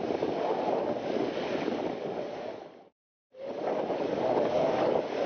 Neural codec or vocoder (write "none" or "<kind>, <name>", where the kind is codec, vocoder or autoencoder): codec, DAC